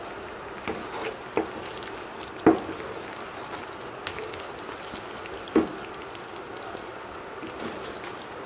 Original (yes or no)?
yes